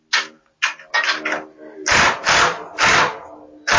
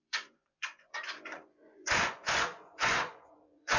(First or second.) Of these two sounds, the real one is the first